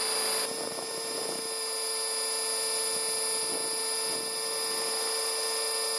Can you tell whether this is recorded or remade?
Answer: recorded